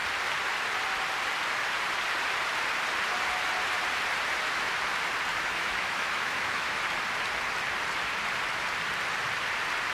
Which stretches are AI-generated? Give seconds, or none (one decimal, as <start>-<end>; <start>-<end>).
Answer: 5.3-6.8